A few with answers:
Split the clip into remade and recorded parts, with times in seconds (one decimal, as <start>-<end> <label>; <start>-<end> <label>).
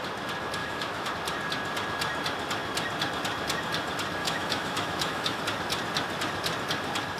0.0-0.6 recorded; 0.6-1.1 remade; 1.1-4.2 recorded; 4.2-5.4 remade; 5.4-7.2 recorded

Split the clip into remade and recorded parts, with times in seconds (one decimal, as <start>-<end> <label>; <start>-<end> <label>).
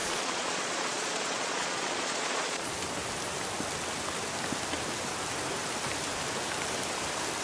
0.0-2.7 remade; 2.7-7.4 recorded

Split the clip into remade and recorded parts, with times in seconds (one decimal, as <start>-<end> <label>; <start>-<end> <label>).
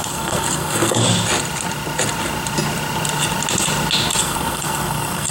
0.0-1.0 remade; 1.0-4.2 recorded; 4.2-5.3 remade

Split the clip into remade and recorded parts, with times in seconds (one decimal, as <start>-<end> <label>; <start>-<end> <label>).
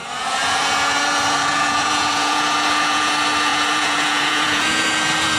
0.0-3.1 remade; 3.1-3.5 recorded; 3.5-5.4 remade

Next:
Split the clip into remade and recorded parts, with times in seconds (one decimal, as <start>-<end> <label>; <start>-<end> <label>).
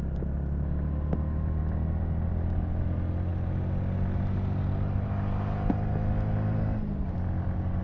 0.0-7.8 recorded